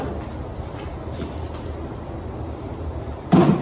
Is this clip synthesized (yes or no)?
no